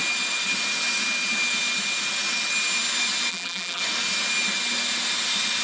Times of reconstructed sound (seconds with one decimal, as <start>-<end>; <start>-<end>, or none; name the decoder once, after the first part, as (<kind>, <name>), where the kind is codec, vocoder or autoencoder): 3.3-3.8 (vocoder, BigVGAN v2)